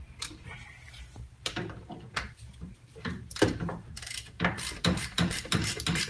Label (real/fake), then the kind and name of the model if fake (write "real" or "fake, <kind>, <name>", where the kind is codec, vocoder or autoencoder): fake, vocoder, BigVGAN v2